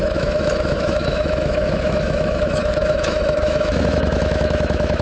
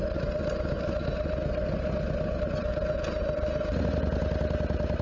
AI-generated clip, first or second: first